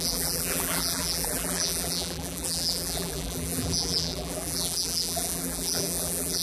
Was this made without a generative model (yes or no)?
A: no